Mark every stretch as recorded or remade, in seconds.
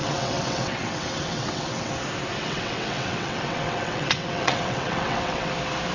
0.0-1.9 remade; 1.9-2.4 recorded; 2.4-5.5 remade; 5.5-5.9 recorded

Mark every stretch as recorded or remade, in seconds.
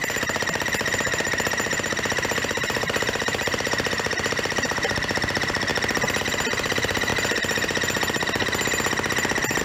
0.0-5.7 remade; 5.7-6.2 recorded; 6.2-7.1 remade; 7.1-9.6 recorded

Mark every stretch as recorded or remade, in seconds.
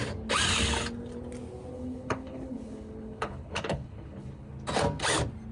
0.0-1.7 recorded; 1.7-4.5 remade; 4.5-5.5 recorded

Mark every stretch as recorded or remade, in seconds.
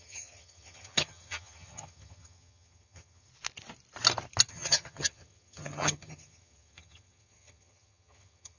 0.0-3.3 remade; 3.3-4.5 recorded; 4.5-8.6 remade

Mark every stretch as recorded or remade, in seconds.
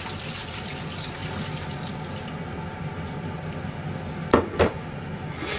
0.0-5.6 recorded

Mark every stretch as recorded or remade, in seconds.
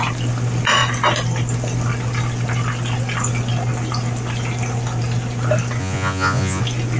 0.0-5.8 recorded; 5.8-6.6 remade; 6.6-7.0 recorded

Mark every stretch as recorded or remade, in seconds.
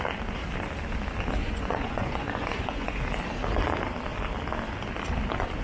0.0-1.4 recorded; 1.4-3.0 remade; 3.0-5.6 recorded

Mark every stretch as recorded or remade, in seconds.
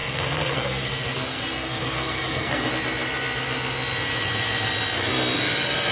0.0-2.7 remade; 2.7-5.9 recorded